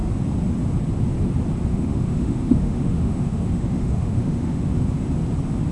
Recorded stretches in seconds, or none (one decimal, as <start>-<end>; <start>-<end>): 0.0-1.7; 5.1-5.7